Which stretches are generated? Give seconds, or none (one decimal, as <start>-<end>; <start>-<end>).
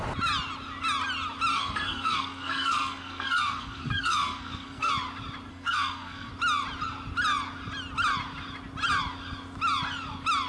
1.5-4.9; 5.5-6.3